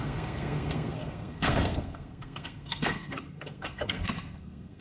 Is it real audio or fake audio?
fake